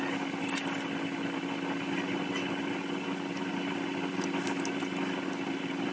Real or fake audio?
real